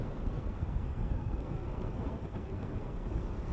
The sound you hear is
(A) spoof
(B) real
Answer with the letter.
A